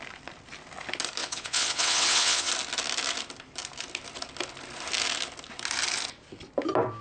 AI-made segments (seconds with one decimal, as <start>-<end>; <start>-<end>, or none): 1.2-2.5